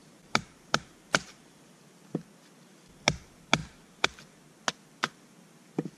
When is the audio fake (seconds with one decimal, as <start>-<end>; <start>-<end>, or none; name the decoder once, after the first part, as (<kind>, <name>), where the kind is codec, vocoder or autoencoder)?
0.0-1.8 (vocoder, BigVGAN v2)